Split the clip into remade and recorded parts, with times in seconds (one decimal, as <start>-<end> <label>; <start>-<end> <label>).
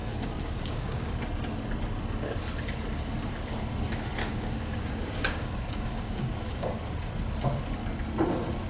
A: 0.0-1.1 remade; 1.1-4.2 recorded; 4.2-6.8 remade; 6.8-8.7 recorded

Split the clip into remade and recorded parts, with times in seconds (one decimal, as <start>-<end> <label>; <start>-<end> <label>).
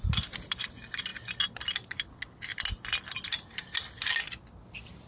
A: 0.0-5.1 recorded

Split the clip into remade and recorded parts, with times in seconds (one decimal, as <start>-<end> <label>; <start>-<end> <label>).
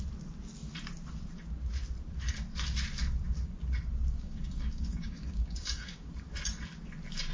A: 0.0-4.2 recorded; 4.2-6.1 remade; 6.1-7.3 recorded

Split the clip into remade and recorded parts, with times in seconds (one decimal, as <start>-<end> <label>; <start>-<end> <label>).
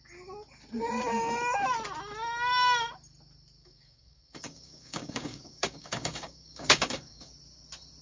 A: 0.0-3.6 recorded; 3.6-7.3 remade; 7.3-8.0 recorded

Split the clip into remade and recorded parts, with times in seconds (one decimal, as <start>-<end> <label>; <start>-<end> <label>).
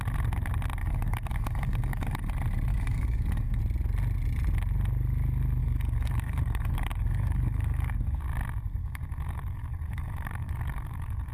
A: 0.0-0.8 recorded; 0.8-2.3 remade; 2.3-2.7 recorded; 2.7-3.6 remade; 3.6-5.6 recorded; 5.6-8.2 remade; 8.2-8.8 recorded; 8.8-11.3 remade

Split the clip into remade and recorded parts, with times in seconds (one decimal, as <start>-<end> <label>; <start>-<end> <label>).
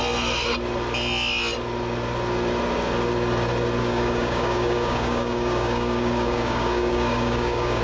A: 0.0-3.8 recorded; 3.8-7.8 remade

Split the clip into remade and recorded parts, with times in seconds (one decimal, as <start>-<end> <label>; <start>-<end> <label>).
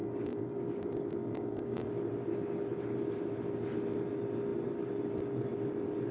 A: 0.0-0.6 remade; 0.6-1.2 recorded; 1.2-1.9 remade; 1.9-6.1 recorded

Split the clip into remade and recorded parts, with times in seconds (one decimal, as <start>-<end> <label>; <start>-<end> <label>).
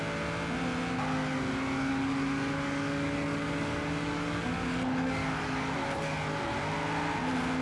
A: 0.0-1.9 recorded; 1.9-5.7 remade; 5.7-7.6 recorded